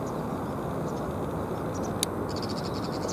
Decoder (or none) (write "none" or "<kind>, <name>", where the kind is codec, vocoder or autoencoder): none